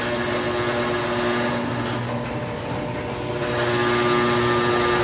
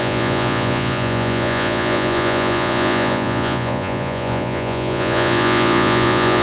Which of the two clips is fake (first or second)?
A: second